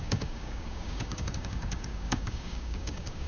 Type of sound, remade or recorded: remade